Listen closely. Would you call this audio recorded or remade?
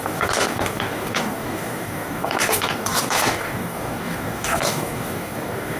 remade